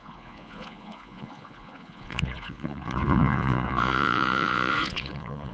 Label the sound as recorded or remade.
remade